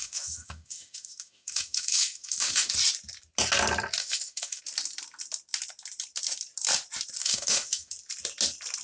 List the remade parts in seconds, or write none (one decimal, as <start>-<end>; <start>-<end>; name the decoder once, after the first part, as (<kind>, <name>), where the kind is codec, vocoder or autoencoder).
0.0-2.7 (autoencoder, DAC-VAE); 4.0-4.6; 7.2-7.9